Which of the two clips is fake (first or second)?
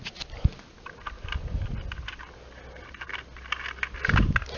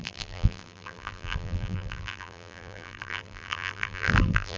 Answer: second